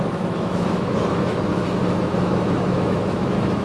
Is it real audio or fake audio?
fake